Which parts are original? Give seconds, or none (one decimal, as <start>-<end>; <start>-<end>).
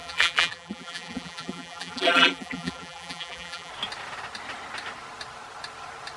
3.7-6.2